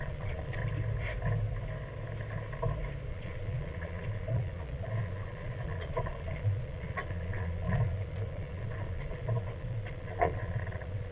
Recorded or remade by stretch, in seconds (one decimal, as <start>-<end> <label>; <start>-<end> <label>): 0.0-0.6 remade; 0.6-3.1 recorded; 3.1-11.1 remade